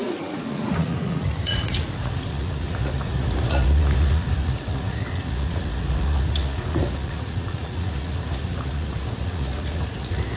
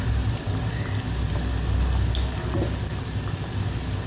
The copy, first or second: first